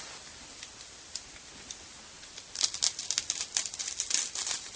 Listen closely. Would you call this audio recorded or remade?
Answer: recorded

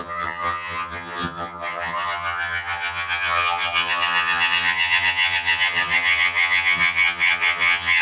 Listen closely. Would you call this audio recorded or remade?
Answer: remade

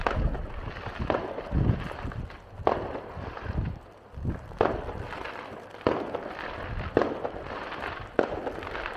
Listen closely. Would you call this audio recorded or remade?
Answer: recorded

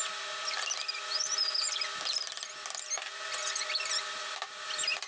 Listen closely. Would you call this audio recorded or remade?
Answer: recorded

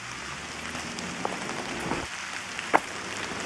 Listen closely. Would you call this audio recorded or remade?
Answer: recorded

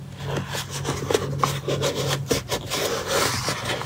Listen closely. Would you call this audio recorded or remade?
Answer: recorded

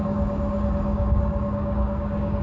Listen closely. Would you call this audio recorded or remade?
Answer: remade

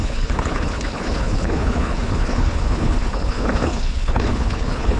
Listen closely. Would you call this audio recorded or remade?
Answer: remade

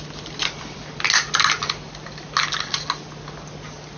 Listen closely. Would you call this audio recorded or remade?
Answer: recorded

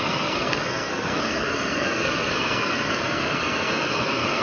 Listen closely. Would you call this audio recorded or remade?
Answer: remade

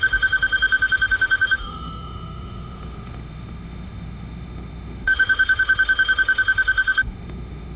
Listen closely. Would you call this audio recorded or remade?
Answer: remade